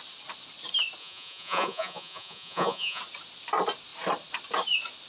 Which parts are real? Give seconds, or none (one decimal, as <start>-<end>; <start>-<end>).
0.0-1.0; 3.0-5.1